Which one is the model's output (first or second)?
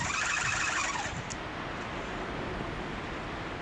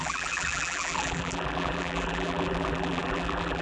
second